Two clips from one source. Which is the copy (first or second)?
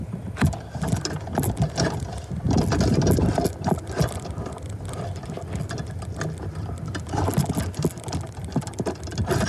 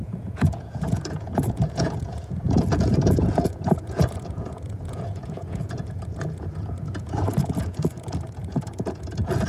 second